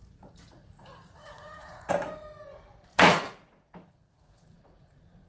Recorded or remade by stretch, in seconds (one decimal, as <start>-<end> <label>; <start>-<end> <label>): 0.0-1.9 remade; 1.9-2.9 recorded; 2.9-5.3 remade